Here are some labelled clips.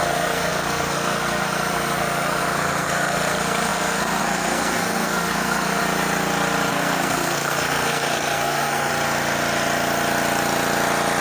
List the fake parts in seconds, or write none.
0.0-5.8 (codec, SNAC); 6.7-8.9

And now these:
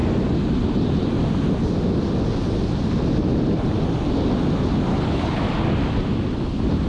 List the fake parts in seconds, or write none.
4.9-5.4 (codec, HILCodec)

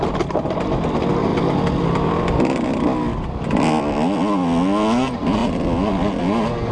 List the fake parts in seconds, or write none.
none

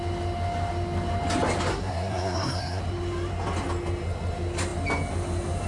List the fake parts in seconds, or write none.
1.7-2.8 (codec, SNAC)

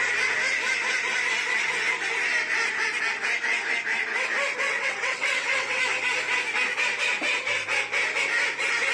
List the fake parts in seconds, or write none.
4.6-5.8 (vocoder, WaveNeXt)

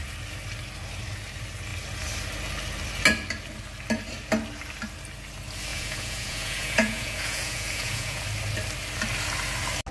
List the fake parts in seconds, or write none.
5.7-8.2 (vocoder, Vocos)

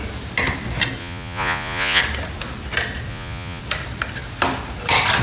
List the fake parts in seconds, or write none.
1.0-2.0 (vocoder, Vocos); 3.1-3.6

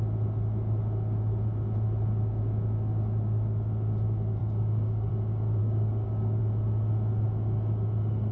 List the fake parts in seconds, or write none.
4.4-5.1 (codec, DAC); 5.6-6.4